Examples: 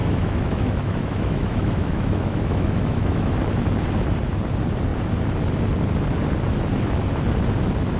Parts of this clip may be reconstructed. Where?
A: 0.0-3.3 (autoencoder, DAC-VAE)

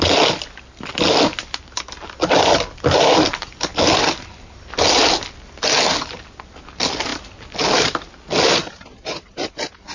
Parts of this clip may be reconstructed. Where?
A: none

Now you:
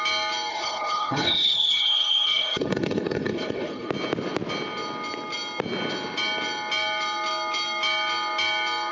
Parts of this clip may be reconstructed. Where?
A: 0.5-3.9 (codec, HILCodec)

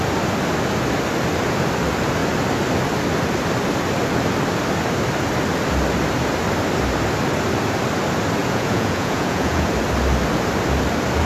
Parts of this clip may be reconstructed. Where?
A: 8.4-9.7 (vocoder, Vocos)